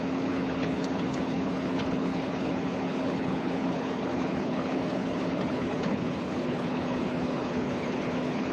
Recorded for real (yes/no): no